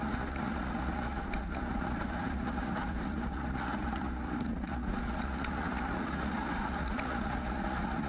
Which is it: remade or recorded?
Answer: remade